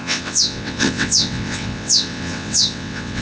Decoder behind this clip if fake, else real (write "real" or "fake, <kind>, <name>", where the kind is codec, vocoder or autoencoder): fake, vocoder, WaveNeXt